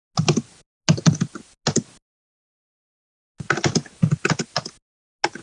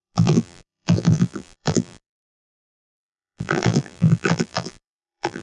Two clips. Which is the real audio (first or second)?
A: first